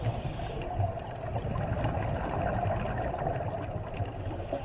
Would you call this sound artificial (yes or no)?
no